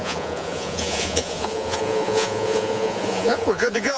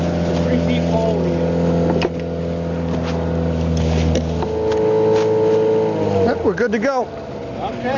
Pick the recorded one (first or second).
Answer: second